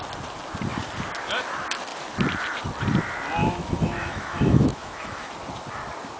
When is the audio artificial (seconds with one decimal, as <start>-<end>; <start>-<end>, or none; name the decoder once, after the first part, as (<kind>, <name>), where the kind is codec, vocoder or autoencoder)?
3.4-5.3 (autoencoder, DAC-VAE)